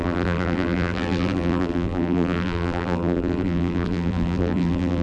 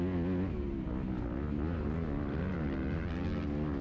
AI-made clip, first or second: first